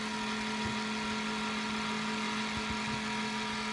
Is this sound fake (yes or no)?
no